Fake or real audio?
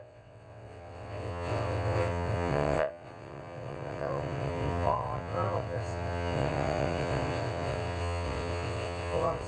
fake